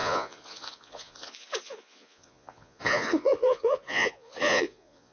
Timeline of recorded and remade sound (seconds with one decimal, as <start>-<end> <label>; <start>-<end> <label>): 0.0-5.1 remade